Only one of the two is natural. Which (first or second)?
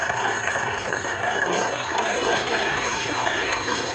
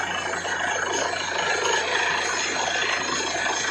second